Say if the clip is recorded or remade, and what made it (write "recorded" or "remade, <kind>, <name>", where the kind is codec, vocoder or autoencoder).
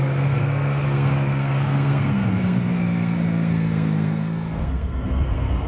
remade, codec, SNAC